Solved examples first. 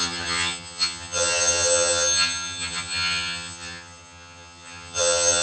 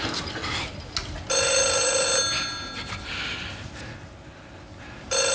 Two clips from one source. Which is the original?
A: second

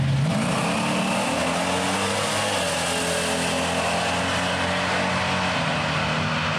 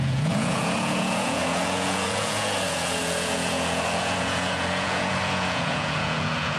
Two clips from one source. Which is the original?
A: first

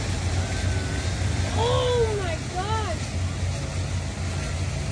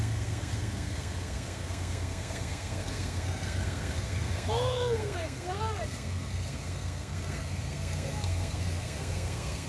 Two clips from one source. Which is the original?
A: first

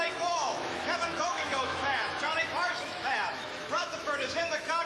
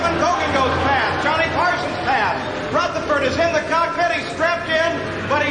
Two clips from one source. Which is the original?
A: second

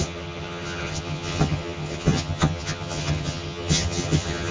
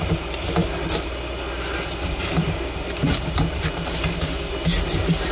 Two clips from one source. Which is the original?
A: second